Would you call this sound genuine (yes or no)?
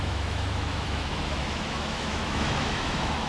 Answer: no